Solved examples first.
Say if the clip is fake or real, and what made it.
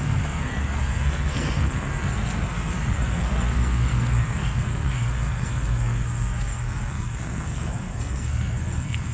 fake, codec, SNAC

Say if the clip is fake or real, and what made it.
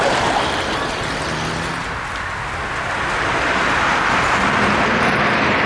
real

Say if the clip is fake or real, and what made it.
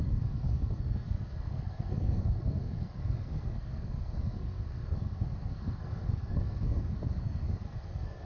fake, codec, SNAC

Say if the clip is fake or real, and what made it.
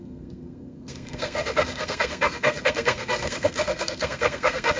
fake, codec, SNAC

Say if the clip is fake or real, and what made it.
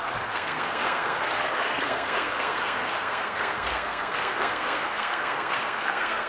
fake, codec, SNAC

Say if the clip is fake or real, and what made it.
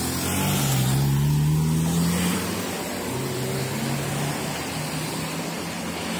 real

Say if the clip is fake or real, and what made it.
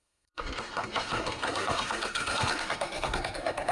fake, codec, SNAC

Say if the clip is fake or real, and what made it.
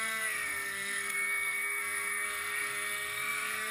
fake, codec, SNAC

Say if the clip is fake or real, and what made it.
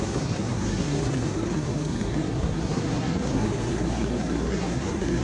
fake, codec, SNAC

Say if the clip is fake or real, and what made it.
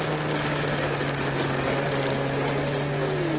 real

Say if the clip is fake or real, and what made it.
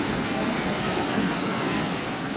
fake, codec, SNAC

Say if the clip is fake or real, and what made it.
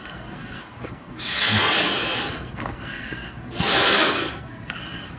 fake, codec, SNAC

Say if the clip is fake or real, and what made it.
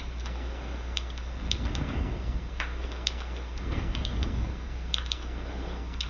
fake, codec, SNAC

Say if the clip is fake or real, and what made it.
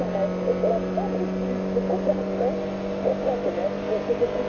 real